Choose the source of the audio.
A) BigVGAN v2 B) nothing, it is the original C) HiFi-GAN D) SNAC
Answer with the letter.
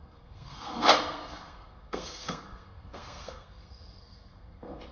D